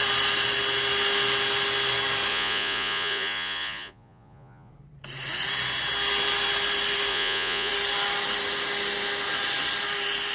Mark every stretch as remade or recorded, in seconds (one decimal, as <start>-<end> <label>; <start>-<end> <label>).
0.0-2.3 recorded; 2.3-4.7 remade; 4.7-7.1 recorded; 7.1-7.7 remade; 7.7-10.3 recorded